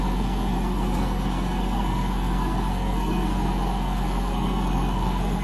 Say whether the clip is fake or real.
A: fake